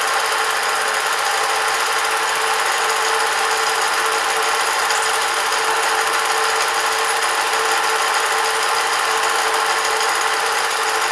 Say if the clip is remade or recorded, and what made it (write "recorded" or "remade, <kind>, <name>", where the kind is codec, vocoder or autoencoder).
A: recorded